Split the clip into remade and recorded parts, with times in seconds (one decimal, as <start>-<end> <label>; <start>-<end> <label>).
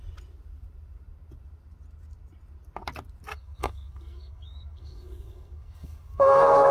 0.0-3.3 recorded; 3.3-6.7 remade